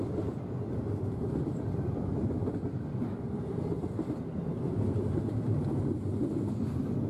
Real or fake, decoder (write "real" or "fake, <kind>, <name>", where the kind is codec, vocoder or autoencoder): real